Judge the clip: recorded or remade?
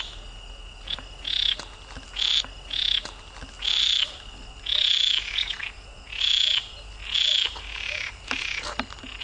recorded